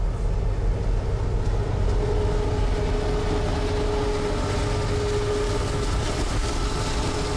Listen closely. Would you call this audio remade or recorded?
recorded